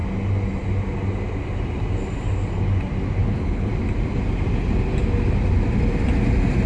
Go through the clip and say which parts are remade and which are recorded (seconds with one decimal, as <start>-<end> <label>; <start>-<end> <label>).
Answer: 0.0-3.2 recorded; 3.2-3.7 remade; 3.7-6.7 recorded